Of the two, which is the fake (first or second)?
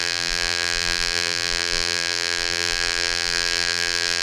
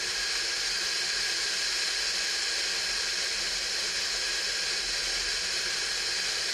first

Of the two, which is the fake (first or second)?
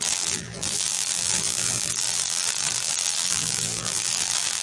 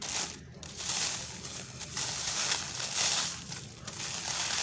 first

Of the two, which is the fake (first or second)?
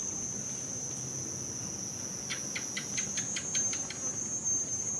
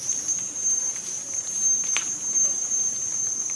second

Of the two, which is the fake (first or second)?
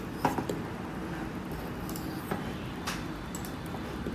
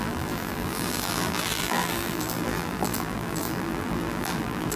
second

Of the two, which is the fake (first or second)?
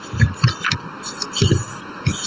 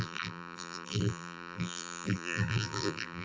second